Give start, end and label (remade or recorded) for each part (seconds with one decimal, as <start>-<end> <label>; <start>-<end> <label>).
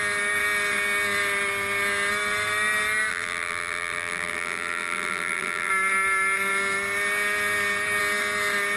0.0-3.1 recorded; 3.1-5.7 remade; 5.7-8.8 recorded